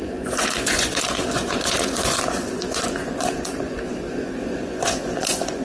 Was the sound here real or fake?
fake